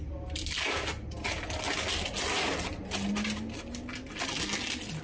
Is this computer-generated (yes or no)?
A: no